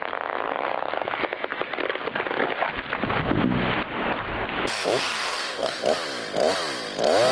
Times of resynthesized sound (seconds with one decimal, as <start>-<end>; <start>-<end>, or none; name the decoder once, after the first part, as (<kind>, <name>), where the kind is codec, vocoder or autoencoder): 5.0-5.8 (codec, DAC)